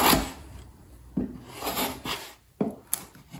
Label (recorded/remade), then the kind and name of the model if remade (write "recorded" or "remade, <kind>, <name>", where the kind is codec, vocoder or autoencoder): remade, vocoder, BigVGAN v2